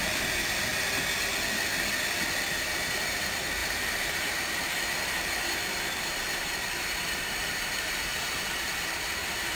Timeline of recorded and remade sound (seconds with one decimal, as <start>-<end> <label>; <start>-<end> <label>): 0.0-0.7 remade; 0.7-2.5 recorded; 2.5-9.6 remade